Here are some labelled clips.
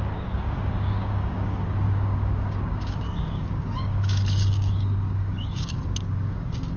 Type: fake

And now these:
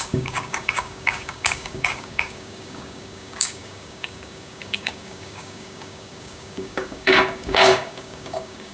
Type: fake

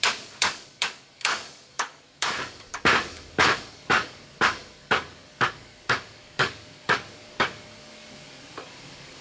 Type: fake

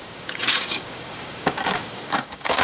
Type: fake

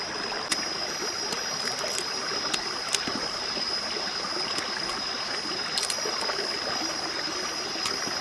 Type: real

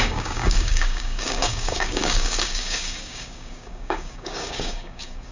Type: fake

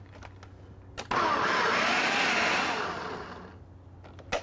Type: real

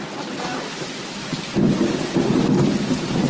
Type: real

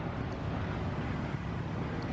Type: real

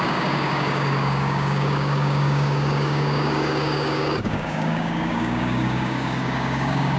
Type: fake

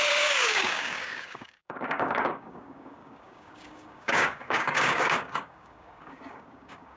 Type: fake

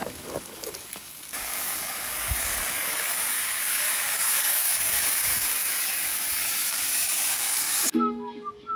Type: fake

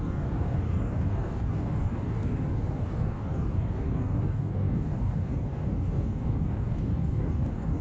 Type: fake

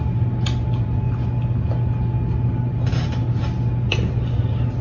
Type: real